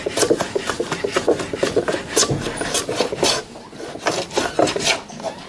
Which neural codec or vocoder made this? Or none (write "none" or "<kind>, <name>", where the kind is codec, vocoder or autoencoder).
none